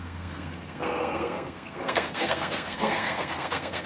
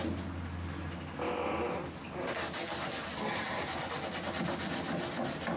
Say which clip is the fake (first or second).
first